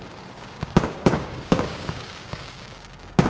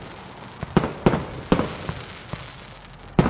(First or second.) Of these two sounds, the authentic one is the second